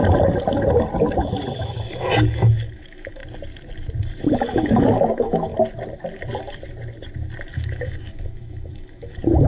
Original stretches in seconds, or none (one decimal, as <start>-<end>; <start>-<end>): 0.0-1.6; 3.2-4.3; 5.5-7.5